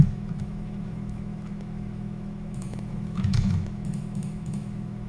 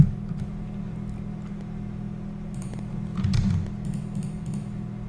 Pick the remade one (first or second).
first